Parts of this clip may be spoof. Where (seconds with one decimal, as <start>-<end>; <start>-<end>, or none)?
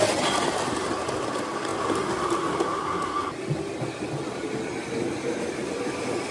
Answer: none